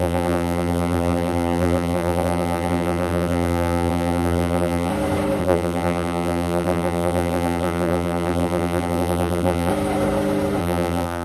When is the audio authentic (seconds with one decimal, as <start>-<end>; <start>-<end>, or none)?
4.9-5.4; 9.7-10.6